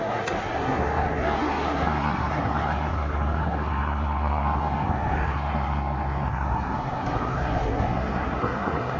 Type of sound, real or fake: fake